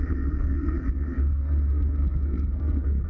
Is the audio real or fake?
fake